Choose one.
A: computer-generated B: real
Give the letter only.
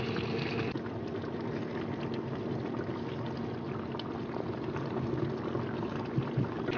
B